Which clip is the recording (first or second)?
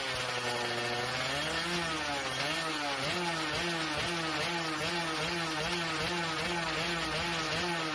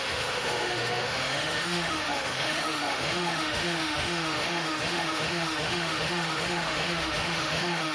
first